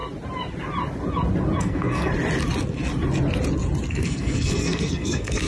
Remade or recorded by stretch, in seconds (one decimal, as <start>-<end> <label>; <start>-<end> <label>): 0.0-1.6 recorded; 1.6-2.1 remade; 2.1-3.9 recorded; 3.9-5.5 remade